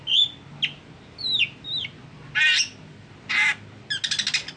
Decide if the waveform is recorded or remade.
recorded